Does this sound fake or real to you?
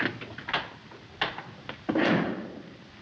real